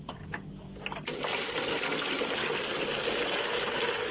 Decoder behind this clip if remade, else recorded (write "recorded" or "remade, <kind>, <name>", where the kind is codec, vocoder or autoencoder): recorded